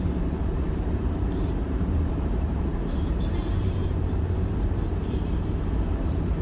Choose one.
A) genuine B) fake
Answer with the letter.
B